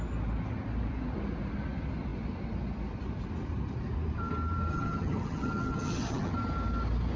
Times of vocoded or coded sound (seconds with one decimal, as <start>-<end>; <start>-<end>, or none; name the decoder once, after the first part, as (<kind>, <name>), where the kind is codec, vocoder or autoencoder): 4.7-6.3 (vocoder, HiFi-GAN)